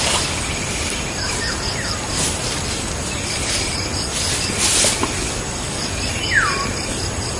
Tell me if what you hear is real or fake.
real